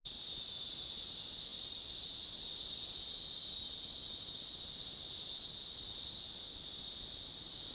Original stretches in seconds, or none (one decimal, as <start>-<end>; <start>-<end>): 0.0-7.7